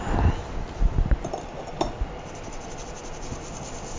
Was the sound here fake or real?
real